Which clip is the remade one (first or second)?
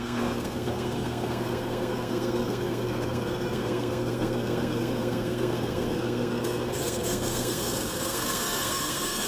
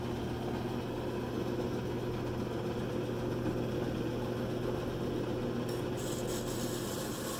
first